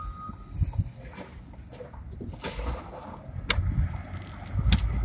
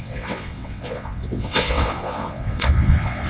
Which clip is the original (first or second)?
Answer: first